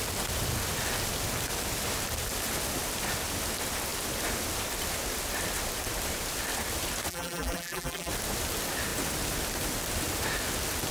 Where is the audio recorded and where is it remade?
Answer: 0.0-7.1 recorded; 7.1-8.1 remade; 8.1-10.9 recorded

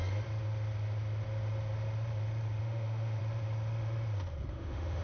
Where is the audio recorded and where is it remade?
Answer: 0.0-2.6 recorded; 2.6-3.2 remade; 3.2-4.5 recorded; 4.5-5.0 remade

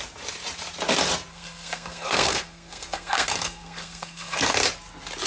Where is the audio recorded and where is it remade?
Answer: 0.0-1.3 recorded; 1.3-4.5 remade; 4.5-5.3 recorded

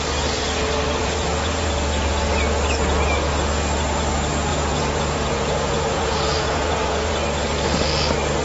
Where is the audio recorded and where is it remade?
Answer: 0.0-1.0 recorded; 1.0-1.7 remade; 1.7-4.5 recorded; 4.5-7.1 remade; 7.1-8.4 recorded

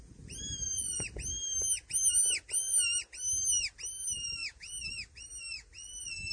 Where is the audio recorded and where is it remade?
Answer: 0.0-6.3 recorded

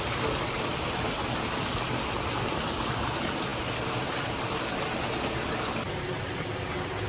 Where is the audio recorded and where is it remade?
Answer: 0.0-7.1 recorded